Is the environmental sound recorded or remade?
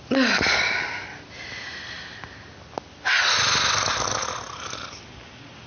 recorded